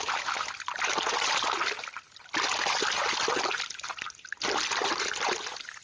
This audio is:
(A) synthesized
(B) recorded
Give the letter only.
B